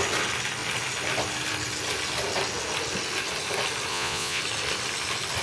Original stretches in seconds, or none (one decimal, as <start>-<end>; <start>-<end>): 0.0-3.9; 4.4-5.4